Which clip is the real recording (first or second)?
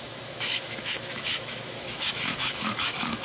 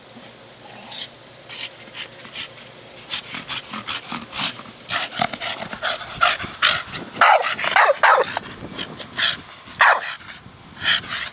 second